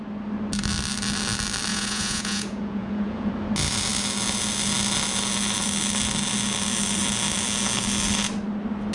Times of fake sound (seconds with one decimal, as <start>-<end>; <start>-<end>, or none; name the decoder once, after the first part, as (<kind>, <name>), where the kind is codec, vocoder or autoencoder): 1.7-3.3 (vocoder, Vocos)

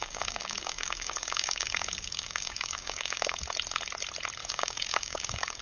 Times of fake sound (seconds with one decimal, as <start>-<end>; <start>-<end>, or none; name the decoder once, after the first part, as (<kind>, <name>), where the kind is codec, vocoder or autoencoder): 0.0-3.4 (codec, DAC); 4.4-5.6

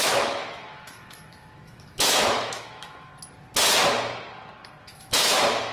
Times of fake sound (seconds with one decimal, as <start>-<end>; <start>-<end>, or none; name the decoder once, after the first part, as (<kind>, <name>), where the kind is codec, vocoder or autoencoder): 0.0-3.1 (autoencoder, DAC-VAE); 4.8-5.7

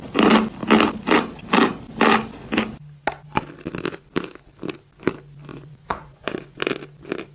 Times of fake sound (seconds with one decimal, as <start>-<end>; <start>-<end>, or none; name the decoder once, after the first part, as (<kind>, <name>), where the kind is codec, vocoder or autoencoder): 5.5-6.6 (vocoder, Vocos)